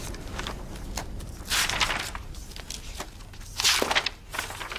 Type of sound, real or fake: real